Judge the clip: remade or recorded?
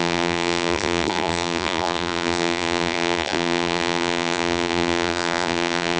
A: remade